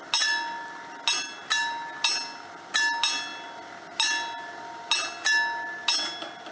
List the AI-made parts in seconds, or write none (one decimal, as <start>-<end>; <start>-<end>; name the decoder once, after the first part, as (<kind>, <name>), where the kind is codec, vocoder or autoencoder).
none